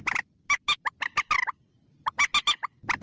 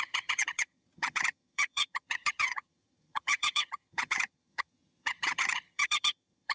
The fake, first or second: second